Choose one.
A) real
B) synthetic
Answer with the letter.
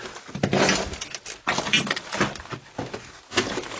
A